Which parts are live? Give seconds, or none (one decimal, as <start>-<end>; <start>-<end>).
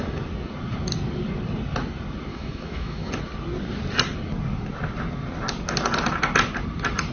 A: 0.0-2.3; 3.1-7.1